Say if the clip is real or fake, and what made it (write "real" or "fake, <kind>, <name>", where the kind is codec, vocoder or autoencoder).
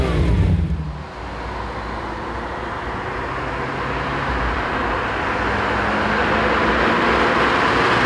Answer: real